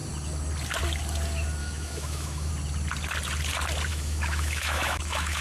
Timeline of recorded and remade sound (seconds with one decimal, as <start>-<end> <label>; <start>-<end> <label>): 0.0-1.6 recorded; 1.6-2.5 remade; 2.5-3.9 recorded; 3.9-5.4 remade

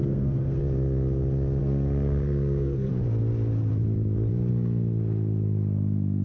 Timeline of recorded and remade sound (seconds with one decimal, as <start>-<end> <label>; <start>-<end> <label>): 0.0-0.6 remade; 0.6-1.6 recorded; 1.6-2.9 remade; 2.9-6.2 recorded

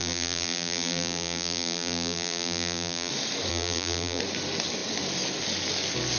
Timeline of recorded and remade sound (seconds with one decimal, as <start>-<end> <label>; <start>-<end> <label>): 0.0-3.1 remade; 3.1-3.5 recorded; 3.5-4.2 remade; 4.2-6.2 recorded